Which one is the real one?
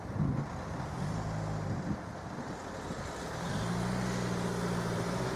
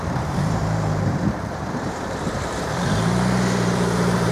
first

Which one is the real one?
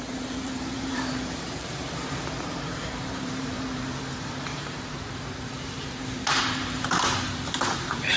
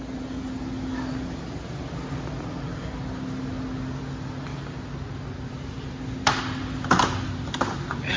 second